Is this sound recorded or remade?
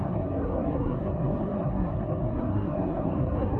remade